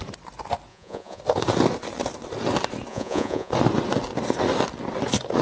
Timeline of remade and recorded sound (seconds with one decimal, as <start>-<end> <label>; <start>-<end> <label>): 0.0-0.7 recorded; 0.7-1.2 remade; 1.2-2.9 recorded; 2.9-3.5 remade; 3.5-5.4 recorded